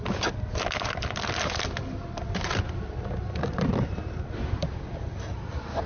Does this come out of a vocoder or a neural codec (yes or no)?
no